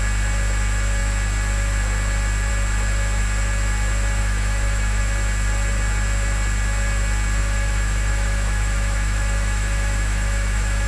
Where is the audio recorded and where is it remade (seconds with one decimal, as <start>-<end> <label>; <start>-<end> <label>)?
0.0-4.2 recorded; 4.2-5.0 remade; 5.0-7.4 recorded; 7.4-10.9 remade